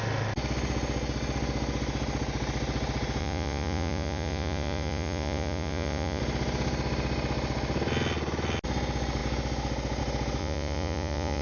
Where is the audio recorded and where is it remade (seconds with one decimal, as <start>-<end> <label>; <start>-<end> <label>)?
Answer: 0.0-3.2 recorded; 3.2-6.2 remade; 6.2-10.4 recorded; 10.4-11.4 remade